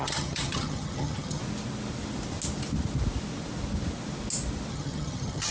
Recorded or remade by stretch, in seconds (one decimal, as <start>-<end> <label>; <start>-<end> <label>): 0.0-1.4 remade; 1.4-4.7 recorded; 4.7-5.5 remade